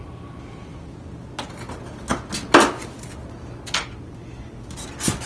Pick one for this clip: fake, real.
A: real